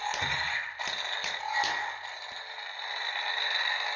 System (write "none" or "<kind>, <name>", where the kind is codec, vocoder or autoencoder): none